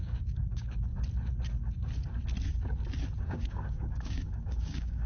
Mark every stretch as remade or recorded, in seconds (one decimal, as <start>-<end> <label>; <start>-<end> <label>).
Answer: 0.0-0.9 remade; 0.9-3.2 recorded; 3.2-5.1 remade

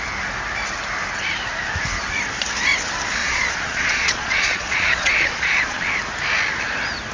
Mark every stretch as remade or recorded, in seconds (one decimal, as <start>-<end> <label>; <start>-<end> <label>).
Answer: 0.0-3.2 recorded; 3.2-5.9 remade; 5.9-7.1 recorded

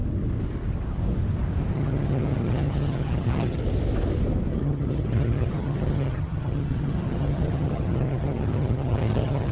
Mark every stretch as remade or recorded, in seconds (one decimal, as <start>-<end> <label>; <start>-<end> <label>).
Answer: 0.0-1.7 recorded; 1.7-3.6 remade; 3.6-4.5 recorded; 4.5-9.5 remade

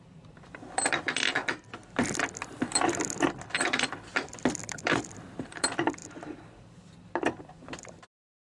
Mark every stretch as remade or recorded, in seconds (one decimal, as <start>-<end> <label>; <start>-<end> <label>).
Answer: 0.0-4.1 remade; 4.1-4.6 recorded; 4.6-8.6 remade

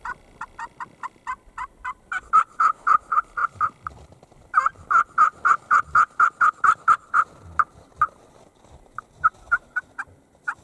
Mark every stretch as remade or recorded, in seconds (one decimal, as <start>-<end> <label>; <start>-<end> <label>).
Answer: 0.0-10.6 recorded

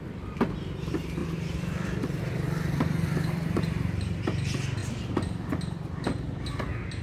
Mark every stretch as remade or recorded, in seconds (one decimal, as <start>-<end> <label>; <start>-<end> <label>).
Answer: 0.0-1.2 recorded; 1.2-4.2 remade; 4.2-4.8 recorded; 4.8-5.5 remade; 5.5-7.0 recorded

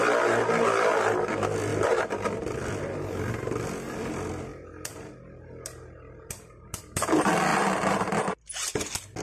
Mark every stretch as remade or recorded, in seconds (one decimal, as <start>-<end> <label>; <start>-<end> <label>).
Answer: 0.0-9.2 recorded